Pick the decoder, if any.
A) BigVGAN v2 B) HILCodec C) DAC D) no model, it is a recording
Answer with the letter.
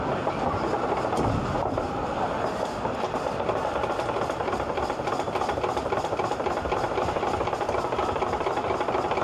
A